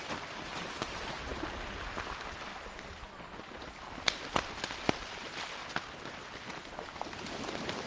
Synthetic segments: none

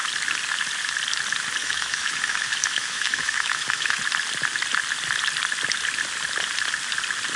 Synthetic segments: 1.6-4.0

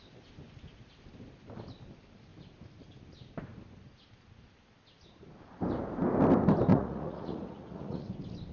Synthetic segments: 6.7-8.1

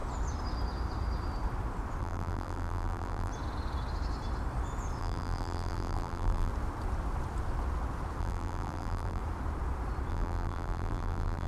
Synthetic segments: 2.0-3.3; 5.0-6.5; 8.2-9.2; 10.1-11.5

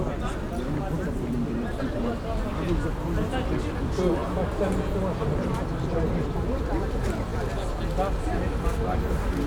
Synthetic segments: none

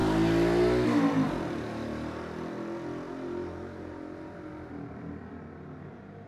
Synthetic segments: none